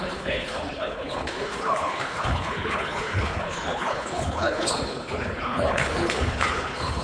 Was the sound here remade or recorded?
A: remade